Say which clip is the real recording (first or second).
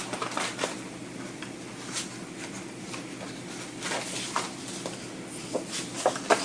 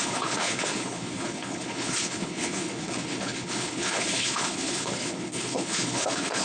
first